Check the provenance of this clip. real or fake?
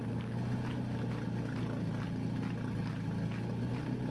real